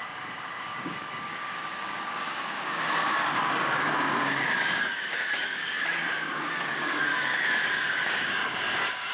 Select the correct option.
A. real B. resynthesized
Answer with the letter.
B